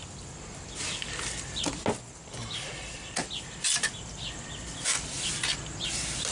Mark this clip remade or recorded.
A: recorded